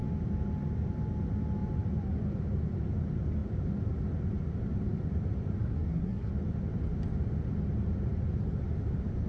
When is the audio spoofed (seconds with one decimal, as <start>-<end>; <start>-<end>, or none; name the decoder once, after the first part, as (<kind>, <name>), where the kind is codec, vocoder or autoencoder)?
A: 5.6-6.3 (codec, SNAC)